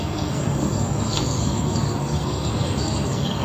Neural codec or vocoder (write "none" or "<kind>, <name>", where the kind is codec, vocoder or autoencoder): codec, SNAC